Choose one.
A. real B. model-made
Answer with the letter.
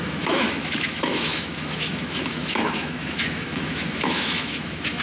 B